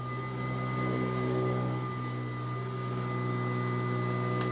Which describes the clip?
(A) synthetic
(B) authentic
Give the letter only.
B